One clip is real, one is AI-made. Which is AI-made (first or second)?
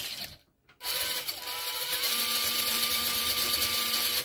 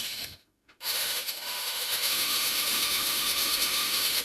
second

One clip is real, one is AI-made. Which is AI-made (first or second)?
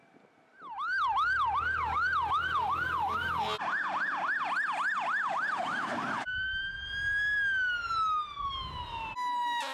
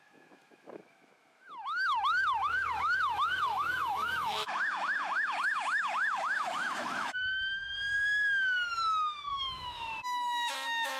second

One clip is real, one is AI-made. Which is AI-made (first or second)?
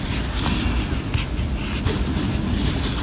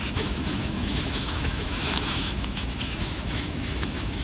second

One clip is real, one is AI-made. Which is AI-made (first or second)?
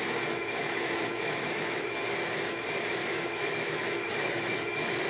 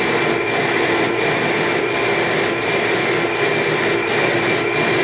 first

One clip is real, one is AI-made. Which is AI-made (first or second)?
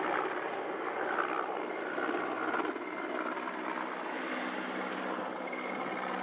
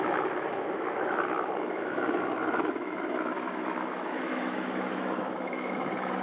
second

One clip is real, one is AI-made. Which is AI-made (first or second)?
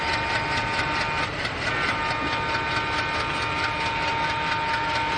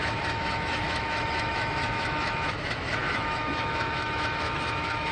second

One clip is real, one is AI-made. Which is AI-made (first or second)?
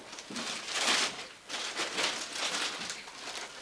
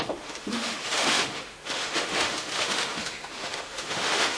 second